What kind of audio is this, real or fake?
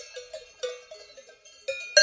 real